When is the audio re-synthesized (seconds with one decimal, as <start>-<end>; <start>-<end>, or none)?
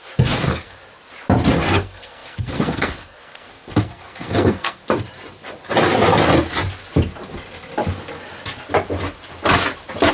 0.0-0.8; 1.7-4.8